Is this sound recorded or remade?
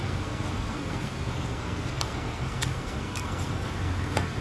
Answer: remade